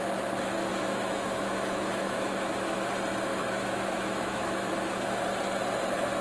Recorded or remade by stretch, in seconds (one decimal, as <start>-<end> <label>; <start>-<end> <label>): 0.0-0.7 recorded; 0.7-2.9 remade; 2.9-3.3 recorded; 3.3-4.7 remade; 4.7-6.2 recorded